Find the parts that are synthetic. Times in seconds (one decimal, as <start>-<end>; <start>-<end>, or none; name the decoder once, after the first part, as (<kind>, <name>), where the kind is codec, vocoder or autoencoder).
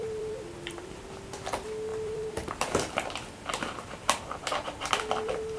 0.0-1.0 (vocoder, BigVGAN v2); 1.9-5.6